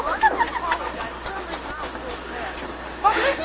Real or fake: real